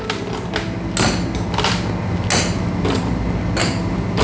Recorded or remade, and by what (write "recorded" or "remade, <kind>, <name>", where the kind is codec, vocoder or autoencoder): recorded